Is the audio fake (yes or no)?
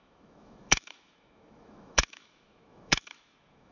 yes